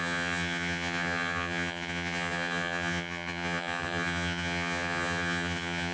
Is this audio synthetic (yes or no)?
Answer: yes